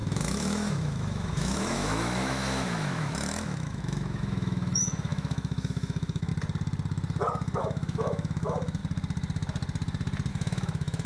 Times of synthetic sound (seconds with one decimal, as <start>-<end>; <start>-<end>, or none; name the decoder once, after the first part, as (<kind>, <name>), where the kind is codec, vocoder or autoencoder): 0.0-6.3 (autoencoder, DAC-VAE); 7.6-8.8; 10.3-11.1